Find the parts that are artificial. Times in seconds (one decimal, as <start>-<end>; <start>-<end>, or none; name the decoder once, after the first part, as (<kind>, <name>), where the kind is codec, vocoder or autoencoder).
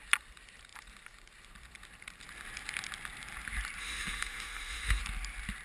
3.8-5.0 (autoencoder, DAC-VAE)